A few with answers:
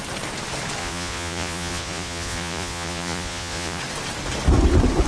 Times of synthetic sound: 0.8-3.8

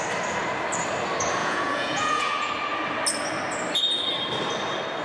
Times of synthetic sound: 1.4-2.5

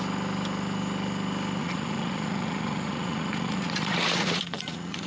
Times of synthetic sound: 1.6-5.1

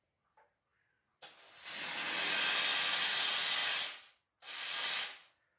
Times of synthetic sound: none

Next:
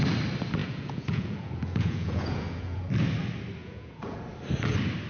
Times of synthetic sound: 0.6-2.9; 3.6-4.2

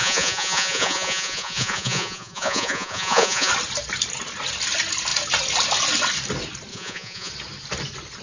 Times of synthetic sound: 0.0-3.5; 6.7-7.3

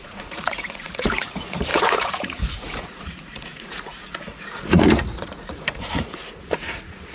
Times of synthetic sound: 0.0-7.1

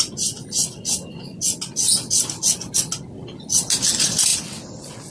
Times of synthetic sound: none